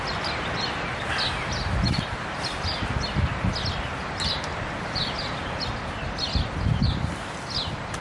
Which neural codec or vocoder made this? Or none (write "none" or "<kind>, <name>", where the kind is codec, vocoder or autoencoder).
none